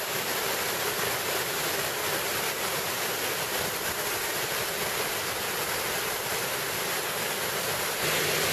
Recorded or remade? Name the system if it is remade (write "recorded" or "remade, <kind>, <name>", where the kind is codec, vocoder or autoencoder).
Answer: recorded